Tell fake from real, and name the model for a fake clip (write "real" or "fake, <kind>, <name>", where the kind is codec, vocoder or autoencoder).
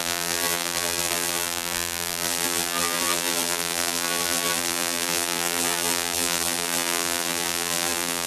fake, vocoder, BigVGAN v2